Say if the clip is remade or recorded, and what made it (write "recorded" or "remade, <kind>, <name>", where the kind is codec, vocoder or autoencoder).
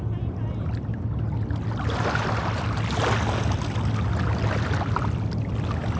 recorded